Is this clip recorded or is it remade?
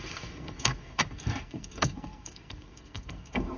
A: remade